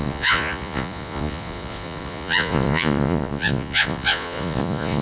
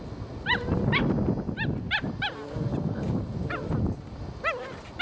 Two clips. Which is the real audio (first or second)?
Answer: second